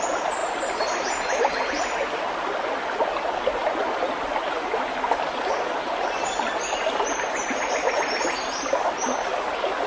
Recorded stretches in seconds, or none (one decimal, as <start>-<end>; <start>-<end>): 0.0-9.9